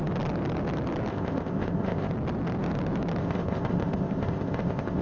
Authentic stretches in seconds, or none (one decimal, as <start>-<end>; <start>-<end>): 0.0-1.1; 2.1-3.2